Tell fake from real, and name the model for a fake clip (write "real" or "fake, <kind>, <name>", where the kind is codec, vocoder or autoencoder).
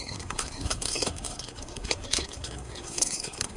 fake, codec, SNAC